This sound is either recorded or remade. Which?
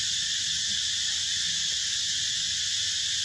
recorded